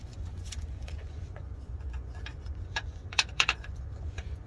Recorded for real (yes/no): no